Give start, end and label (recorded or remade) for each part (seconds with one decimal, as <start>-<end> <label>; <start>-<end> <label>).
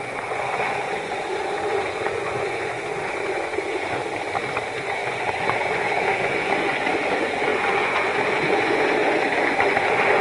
0.0-4.0 remade; 4.0-4.8 recorded; 4.8-10.2 remade